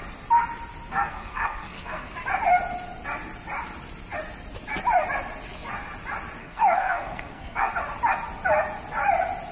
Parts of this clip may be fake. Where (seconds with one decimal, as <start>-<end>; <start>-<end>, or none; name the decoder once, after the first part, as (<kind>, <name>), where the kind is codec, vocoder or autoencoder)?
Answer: 0.9-2.1 (codec, SNAC); 6.4-7.7